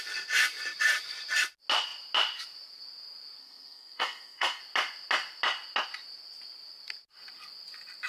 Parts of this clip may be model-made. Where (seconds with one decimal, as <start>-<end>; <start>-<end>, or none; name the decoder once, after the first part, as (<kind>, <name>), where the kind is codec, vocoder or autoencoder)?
3.4-4.6 (codec, SNAC)